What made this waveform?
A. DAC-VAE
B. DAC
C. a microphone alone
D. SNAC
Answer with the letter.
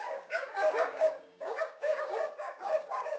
B